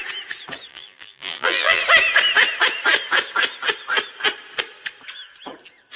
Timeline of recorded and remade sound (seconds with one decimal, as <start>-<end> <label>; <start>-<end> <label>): 0.0-0.7 recorded; 0.7-1.8 remade; 1.8-6.0 recorded